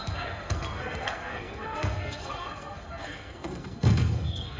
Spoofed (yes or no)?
yes